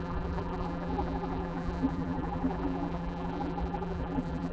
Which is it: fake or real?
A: fake